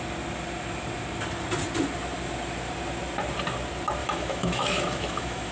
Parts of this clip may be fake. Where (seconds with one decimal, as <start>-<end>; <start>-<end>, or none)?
4.0-5.5